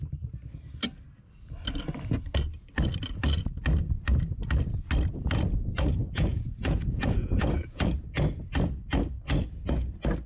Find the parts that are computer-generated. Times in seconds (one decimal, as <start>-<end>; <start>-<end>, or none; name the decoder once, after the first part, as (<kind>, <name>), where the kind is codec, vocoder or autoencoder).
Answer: 6.0-7.9 (vocoder, Vocos)